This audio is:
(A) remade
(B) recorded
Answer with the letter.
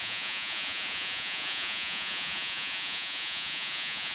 A